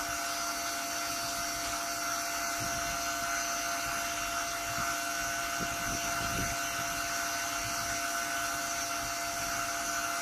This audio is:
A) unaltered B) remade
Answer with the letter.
A